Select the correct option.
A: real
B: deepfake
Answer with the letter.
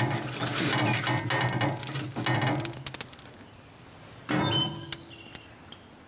A